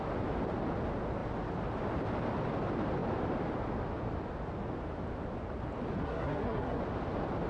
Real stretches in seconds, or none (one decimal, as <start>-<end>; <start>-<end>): 0.0-6.0; 6.8-7.5